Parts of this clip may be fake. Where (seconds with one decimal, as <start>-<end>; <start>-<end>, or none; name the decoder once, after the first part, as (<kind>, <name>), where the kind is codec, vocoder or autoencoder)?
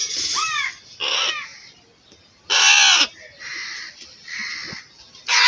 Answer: none